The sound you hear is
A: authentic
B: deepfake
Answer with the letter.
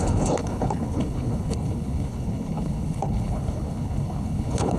B